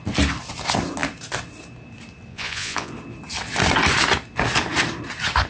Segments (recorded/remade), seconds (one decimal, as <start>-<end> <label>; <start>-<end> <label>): 0.0-2.3 recorded; 2.3-2.9 remade; 2.9-5.5 recorded